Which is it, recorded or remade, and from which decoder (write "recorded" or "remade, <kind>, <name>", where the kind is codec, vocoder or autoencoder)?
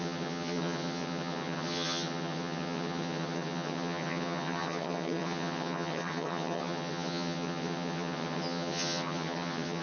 remade, vocoder, HiFi-GAN